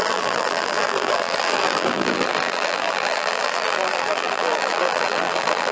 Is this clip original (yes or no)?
no